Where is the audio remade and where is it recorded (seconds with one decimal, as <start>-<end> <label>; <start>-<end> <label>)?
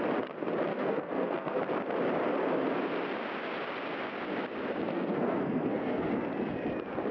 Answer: 0.0-0.7 recorded; 0.7-1.6 remade; 1.6-4.9 recorded; 4.9-6.1 remade; 6.1-7.1 recorded